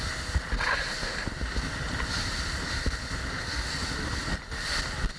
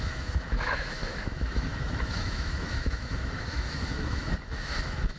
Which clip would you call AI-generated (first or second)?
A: second